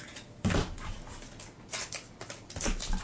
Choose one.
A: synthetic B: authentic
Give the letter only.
B